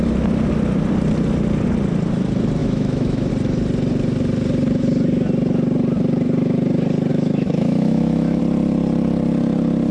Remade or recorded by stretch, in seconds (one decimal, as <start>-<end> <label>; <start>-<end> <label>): 0.0-2.6 recorded; 2.6-3.3 remade; 3.3-7.1 recorded; 7.1-8.4 remade; 8.4-9.9 recorded